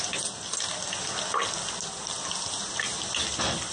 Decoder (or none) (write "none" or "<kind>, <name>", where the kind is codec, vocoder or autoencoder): none